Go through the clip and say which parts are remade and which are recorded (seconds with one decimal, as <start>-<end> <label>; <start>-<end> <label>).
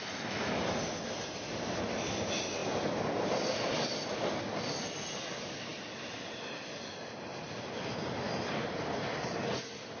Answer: 0.0-2.6 recorded; 2.6-4.6 remade; 4.6-5.7 recorded; 5.7-6.5 remade; 6.5-10.0 recorded